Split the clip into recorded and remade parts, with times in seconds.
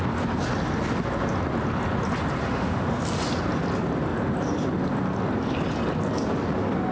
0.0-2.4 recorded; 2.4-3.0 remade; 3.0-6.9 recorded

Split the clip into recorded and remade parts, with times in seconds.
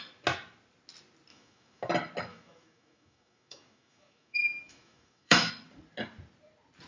0.0-1.3 recorded; 1.3-1.9 remade; 1.9-2.3 recorded; 2.3-5.5 remade; 5.5-6.9 recorded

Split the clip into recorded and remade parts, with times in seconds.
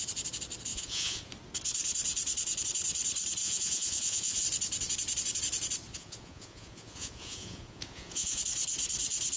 0.0-0.7 recorded; 0.7-1.3 remade; 1.3-3.4 recorded; 3.4-4.4 remade; 4.4-5.9 recorded; 5.9-8.4 remade; 8.4-9.4 recorded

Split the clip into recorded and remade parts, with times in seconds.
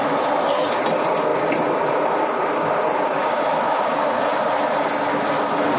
0.0-5.8 recorded